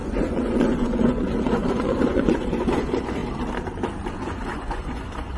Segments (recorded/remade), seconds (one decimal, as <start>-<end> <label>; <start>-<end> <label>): 0.0-3.2 remade; 3.2-4.1 recorded; 4.1-5.4 remade